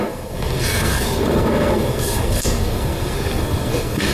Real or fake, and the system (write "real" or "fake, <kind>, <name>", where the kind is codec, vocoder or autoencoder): fake, codec, SNAC